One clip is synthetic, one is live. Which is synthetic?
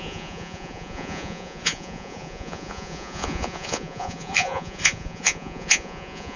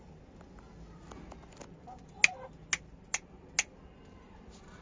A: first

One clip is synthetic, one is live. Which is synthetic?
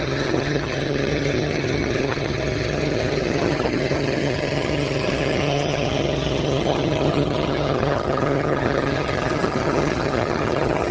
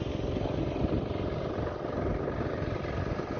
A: first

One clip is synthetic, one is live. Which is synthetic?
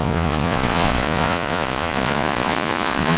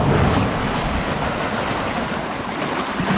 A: first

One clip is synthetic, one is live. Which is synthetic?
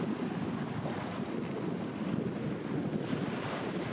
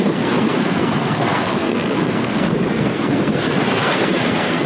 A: second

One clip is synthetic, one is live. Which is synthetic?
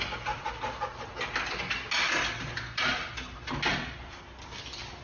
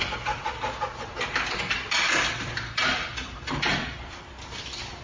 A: second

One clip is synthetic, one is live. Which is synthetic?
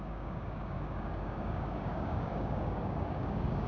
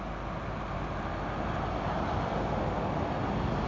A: first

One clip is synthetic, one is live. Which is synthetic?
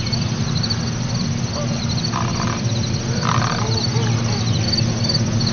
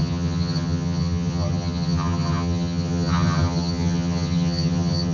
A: second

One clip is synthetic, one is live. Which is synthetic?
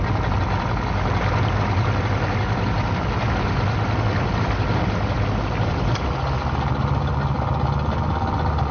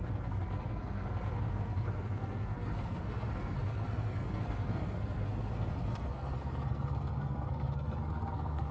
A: second